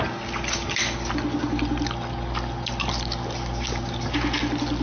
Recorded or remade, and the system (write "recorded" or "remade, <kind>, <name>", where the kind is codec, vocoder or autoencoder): recorded